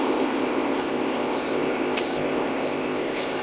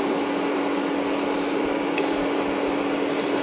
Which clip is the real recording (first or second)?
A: second